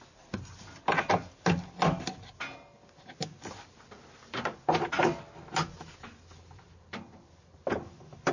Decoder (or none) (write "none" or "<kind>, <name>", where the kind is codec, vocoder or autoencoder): none